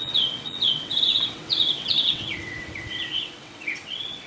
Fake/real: fake